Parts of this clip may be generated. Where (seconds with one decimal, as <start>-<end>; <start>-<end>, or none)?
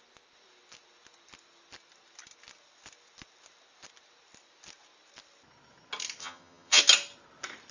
6.2-6.8